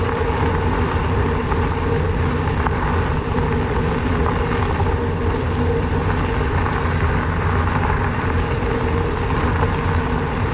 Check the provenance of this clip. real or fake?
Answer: real